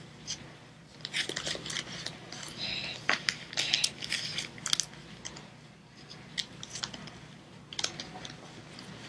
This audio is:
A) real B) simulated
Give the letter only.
A